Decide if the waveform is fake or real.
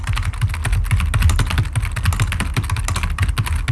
real